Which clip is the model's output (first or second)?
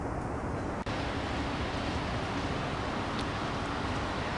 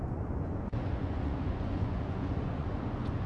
second